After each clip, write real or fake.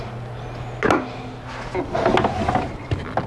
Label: real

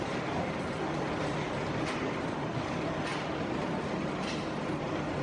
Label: fake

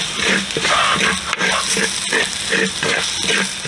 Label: real